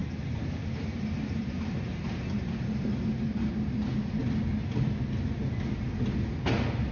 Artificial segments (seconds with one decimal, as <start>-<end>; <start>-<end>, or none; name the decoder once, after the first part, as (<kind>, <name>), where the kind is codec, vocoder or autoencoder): 0.0-3.5 (vocoder, BigVGAN v2)